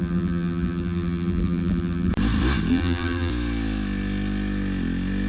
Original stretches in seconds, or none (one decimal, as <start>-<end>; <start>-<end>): 2.1-2.7; 3.3-5.3